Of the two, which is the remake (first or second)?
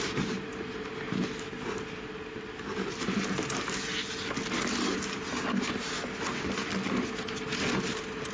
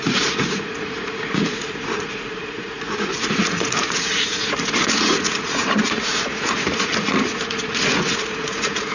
second